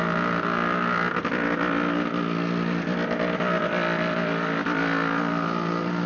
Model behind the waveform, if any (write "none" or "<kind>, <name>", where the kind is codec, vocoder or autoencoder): none